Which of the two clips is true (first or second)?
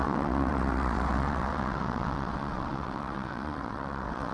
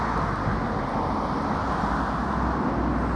second